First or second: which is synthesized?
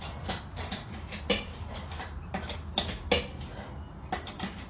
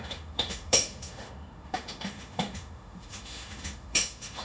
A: second